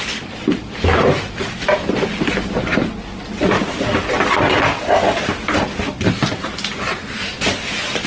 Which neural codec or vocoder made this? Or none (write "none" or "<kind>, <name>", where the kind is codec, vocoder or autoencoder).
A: none